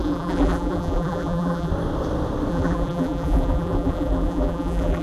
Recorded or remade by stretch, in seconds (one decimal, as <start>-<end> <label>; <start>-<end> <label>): 0.0-1.7 remade; 1.7-2.5 recorded; 2.5-5.0 remade